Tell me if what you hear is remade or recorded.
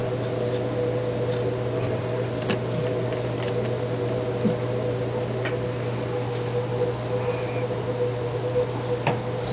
recorded